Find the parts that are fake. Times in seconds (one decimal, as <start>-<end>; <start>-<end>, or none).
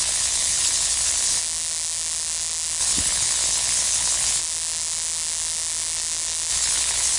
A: 0.0-1.4; 2.8-4.4; 6.5-7.2